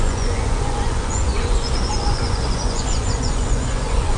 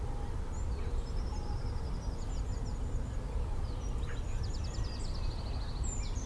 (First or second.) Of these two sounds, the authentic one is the second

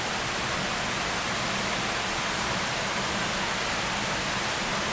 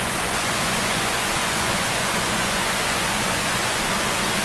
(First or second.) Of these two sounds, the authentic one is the first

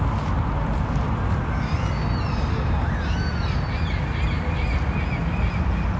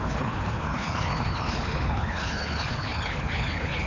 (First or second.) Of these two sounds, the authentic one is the first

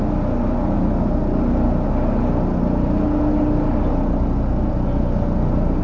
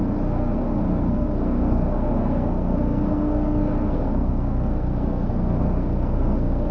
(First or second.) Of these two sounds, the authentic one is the first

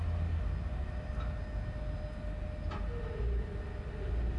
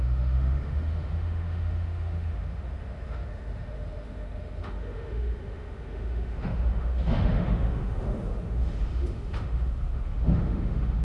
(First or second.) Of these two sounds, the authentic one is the first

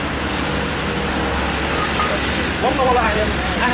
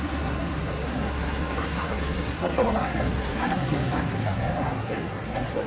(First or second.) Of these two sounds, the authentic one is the first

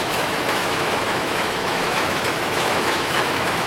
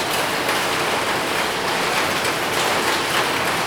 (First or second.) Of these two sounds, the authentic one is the second